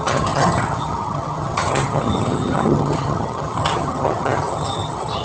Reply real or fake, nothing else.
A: fake